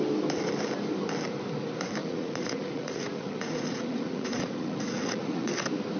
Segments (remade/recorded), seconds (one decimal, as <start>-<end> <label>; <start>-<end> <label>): 0.0-2.0 recorded; 2.0-5.5 remade; 5.5-6.0 recorded